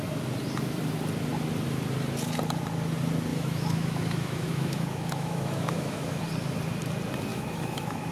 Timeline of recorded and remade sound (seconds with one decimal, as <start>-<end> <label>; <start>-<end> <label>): 0.0-3.3 recorded; 3.3-6.2 remade; 6.2-7.3 recorded; 7.3-8.1 remade